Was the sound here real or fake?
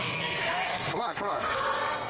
fake